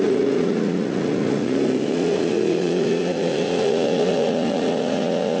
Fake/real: fake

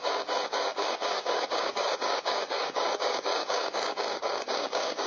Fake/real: fake